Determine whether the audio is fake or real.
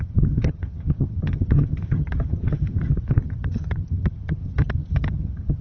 fake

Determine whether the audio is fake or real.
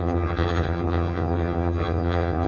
fake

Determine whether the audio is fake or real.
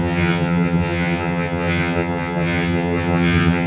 fake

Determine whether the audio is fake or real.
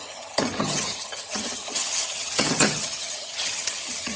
fake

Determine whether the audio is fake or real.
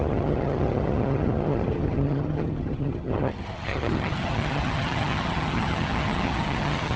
fake